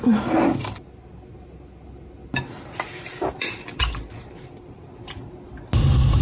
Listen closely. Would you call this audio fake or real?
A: real